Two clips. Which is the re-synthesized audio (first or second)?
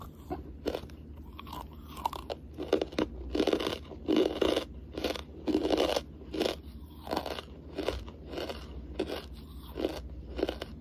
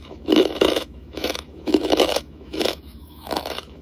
second